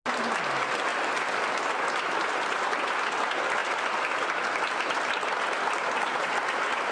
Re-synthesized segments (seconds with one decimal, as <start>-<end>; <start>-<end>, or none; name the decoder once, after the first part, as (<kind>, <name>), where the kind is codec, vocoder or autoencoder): none